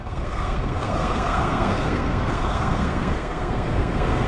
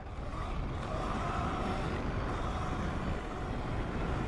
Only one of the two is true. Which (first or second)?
second